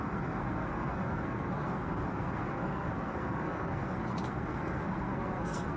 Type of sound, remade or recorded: remade